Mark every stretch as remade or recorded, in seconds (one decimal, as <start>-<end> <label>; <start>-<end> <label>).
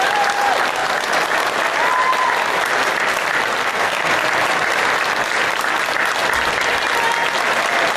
0.0-3.6 recorded; 3.6-4.1 remade; 4.1-8.0 recorded